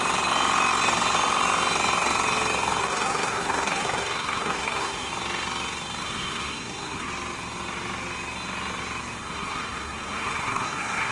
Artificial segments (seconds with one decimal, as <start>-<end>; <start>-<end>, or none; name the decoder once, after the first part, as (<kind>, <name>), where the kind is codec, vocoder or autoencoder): 2.8-5.1 (codec, SNAC); 6.0-7.1; 9.2-11.1

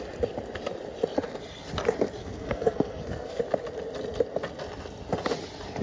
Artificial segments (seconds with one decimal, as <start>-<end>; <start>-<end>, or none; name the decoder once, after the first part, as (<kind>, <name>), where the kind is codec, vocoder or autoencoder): 2.2-3.4 (codec, SNAC)

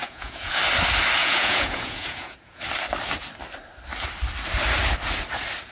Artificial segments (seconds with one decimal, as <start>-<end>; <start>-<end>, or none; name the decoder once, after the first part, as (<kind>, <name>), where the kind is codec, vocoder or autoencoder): 0.0-0.6 (vocoder, Vocos); 1.2-2.6

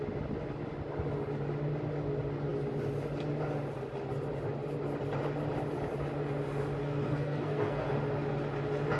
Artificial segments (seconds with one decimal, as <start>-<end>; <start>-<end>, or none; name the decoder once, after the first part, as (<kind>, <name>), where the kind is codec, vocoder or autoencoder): 6.8-7.9 (codec, SNAC)